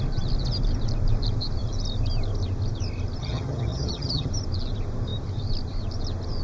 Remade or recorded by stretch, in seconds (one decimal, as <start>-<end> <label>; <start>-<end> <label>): 0.0-3.2 recorded; 3.2-4.3 remade; 4.3-6.4 recorded